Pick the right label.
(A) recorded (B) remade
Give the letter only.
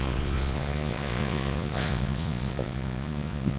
B